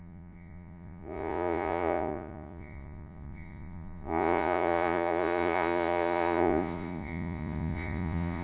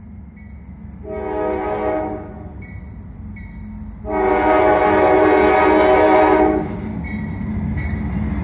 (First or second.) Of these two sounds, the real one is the second